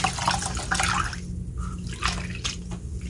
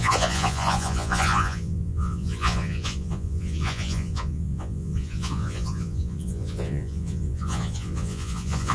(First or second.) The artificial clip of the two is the second